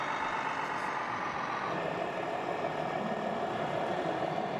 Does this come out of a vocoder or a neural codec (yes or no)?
no